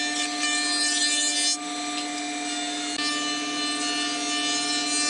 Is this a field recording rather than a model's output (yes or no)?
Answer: yes